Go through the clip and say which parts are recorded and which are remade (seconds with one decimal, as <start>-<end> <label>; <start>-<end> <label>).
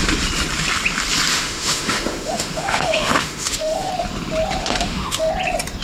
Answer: 0.0-1.3 recorded; 1.3-3.9 remade; 3.9-4.6 recorded; 4.6-5.3 remade; 5.3-5.8 recorded